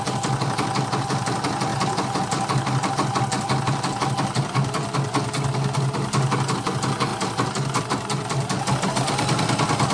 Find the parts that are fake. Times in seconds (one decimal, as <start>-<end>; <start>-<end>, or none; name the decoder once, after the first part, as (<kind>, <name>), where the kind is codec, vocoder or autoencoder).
none